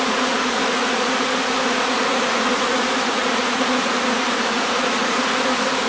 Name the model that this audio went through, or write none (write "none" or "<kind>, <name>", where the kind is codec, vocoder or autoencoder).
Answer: vocoder, Vocos